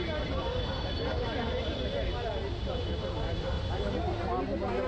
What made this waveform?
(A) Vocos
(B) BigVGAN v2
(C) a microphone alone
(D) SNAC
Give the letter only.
C